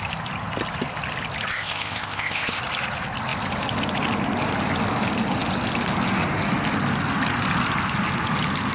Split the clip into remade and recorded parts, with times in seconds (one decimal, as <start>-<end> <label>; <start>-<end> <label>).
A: 0.0-1.5 recorded; 1.5-2.6 remade; 2.6-8.7 recorded